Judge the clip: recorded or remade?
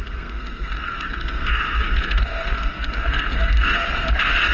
remade